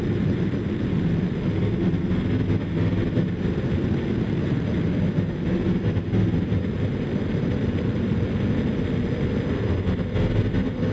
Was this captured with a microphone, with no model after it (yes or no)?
yes